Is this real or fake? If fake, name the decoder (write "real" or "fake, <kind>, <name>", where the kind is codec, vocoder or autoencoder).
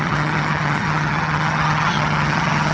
fake, vocoder, HiFi-GAN